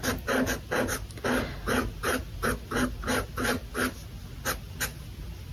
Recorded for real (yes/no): yes